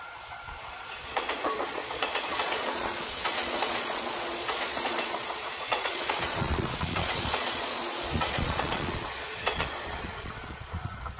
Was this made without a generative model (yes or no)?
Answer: no